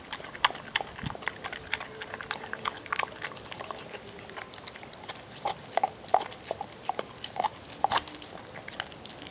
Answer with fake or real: real